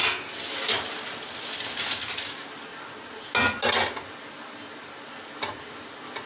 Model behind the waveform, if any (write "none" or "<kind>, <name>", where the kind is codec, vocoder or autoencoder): none